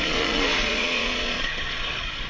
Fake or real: fake